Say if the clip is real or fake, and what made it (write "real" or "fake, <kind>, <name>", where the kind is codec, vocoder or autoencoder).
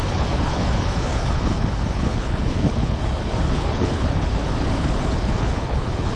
fake, codec, HILCodec